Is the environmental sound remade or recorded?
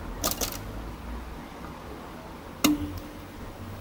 recorded